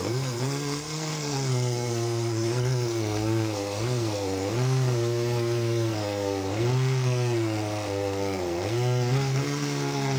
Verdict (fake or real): fake